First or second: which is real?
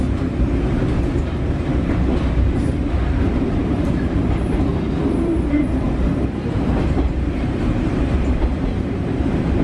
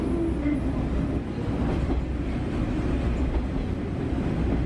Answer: second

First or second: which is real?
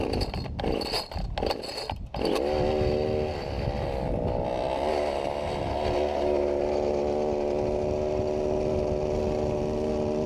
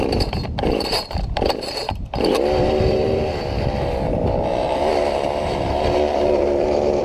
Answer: first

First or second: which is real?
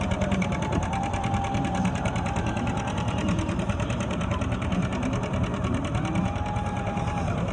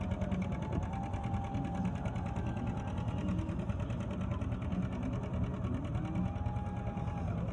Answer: second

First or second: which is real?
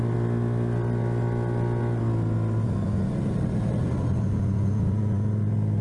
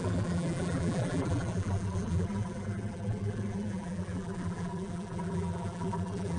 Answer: first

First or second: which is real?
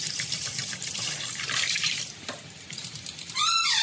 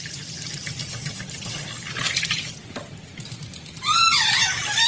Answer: second